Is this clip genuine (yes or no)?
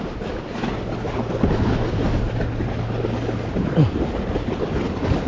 yes